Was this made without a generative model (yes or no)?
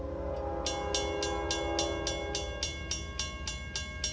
yes